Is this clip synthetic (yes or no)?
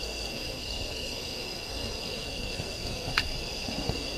yes